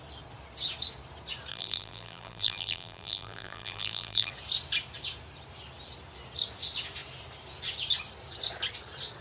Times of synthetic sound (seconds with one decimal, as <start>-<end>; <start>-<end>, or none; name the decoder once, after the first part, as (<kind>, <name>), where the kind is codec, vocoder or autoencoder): 1.5-4.3 (vocoder, BigVGAN v2)